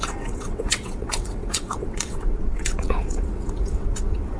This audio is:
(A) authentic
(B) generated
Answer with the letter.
B